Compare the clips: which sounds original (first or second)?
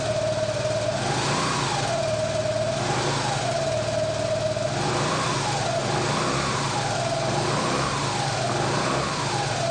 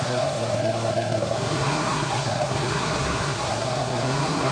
first